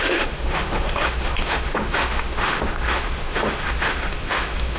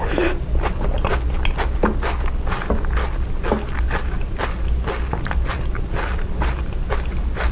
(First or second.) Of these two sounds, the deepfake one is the first